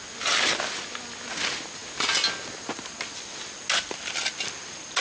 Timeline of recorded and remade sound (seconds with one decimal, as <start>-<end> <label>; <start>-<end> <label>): 0.0-5.0 recorded